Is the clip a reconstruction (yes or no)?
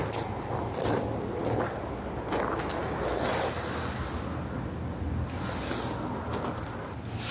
no